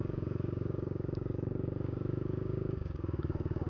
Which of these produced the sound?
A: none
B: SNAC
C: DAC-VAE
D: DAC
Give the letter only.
D